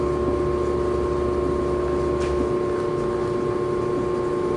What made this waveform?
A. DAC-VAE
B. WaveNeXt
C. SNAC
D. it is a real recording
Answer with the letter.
D